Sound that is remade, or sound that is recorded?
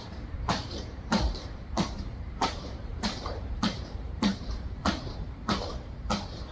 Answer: remade